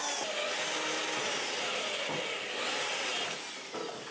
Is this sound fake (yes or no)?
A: no